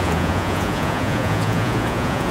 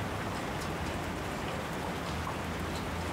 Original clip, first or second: second